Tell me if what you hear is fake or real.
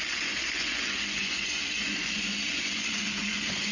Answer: fake